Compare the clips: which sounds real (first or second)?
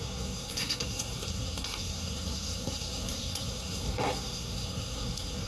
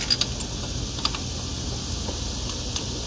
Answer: second